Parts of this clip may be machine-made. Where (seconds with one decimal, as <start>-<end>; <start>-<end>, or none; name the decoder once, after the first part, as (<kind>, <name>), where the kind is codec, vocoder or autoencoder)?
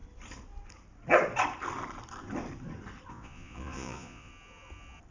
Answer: 3.1-4.3 (vocoder, Vocos)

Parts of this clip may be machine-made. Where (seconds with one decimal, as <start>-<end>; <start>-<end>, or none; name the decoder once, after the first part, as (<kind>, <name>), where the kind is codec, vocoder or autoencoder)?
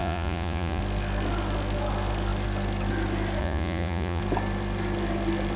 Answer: 0.0-0.8 (vocoder, Vocos); 3.4-4.2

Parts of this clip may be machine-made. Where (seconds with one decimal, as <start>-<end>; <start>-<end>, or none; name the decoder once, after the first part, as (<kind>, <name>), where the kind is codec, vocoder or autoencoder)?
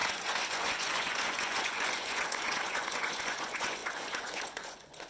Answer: 0.0-5.1 (vocoder, Vocos)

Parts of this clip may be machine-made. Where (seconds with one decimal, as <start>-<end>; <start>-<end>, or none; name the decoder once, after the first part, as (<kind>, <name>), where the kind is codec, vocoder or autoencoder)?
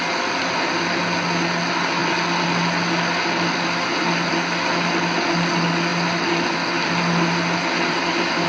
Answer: none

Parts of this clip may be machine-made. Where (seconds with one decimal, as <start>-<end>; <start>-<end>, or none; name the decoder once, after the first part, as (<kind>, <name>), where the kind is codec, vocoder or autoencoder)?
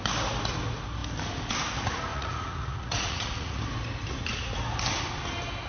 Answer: 2.1-3.6 (vocoder, Vocos)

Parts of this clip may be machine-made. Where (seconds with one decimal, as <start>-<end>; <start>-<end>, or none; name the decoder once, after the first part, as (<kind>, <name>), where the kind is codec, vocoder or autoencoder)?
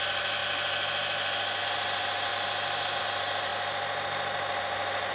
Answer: none